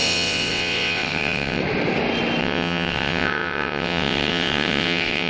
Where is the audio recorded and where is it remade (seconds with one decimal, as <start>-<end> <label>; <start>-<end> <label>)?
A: 0.0-1.6 remade; 1.6-2.4 recorded; 2.4-5.3 remade